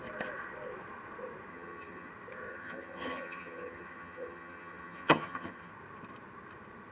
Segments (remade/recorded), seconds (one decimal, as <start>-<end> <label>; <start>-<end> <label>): 0.0-1.5 recorded; 1.5-2.1 remade; 2.1-2.5 recorded; 2.5-5.7 remade; 5.7-6.9 recorded